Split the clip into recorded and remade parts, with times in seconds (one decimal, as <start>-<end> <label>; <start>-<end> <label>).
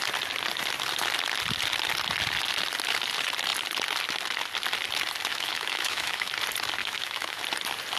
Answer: 0.0-5.3 recorded; 5.3-6.3 remade; 6.3-6.8 recorded; 6.8-7.4 remade; 7.4-8.0 recorded